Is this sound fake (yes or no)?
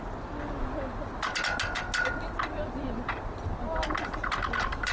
no